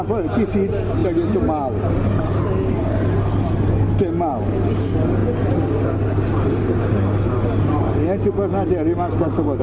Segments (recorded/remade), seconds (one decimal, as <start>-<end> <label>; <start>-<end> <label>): 0.0-9.6 recorded